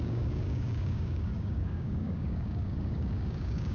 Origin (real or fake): fake